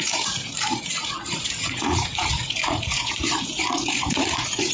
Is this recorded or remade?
remade